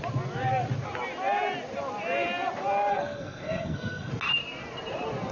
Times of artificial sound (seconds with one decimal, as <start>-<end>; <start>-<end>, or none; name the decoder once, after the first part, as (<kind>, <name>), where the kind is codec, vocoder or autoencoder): 2.9-4.1 (codec, SNAC)